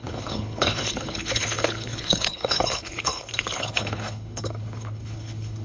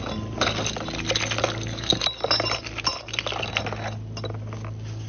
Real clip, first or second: second